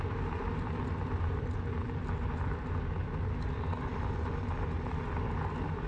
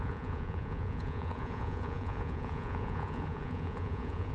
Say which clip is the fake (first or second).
second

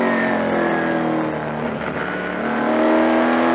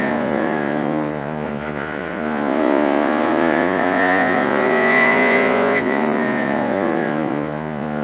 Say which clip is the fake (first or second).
second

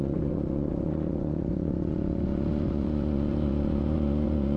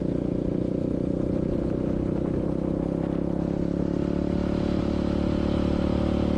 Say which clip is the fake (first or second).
first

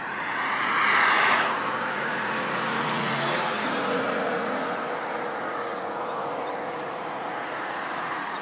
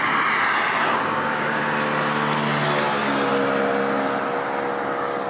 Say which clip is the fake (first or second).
first